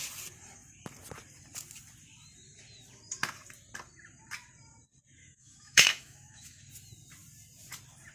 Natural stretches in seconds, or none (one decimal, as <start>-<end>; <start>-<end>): 0.0-5.2; 6.6-8.1